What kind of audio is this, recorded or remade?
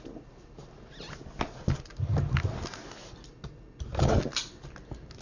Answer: recorded